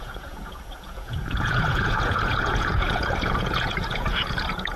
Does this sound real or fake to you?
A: fake